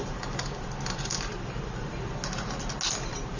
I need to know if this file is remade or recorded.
recorded